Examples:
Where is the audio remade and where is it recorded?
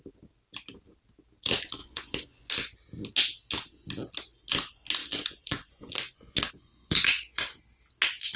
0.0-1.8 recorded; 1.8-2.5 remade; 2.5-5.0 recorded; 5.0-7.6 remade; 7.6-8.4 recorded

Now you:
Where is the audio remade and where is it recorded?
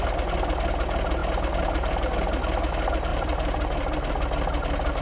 0.0-3.1 recorded; 3.1-4.1 remade; 4.1-5.0 recorded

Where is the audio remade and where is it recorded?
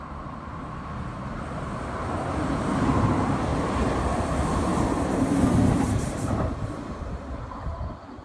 0.0-3.5 remade; 3.5-4.2 recorded; 4.2-4.7 remade; 4.7-5.4 recorded; 5.4-8.2 remade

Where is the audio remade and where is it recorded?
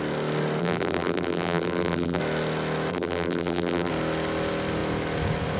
0.0-0.6 recorded; 0.6-2.2 remade; 2.2-2.9 recorded; 2.9-3.9 remade; 3.9-5.6 recorded